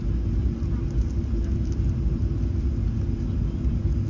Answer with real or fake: real